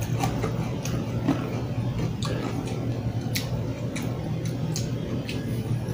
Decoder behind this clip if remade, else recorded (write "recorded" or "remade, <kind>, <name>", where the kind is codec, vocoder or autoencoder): recorded